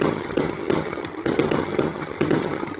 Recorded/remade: remade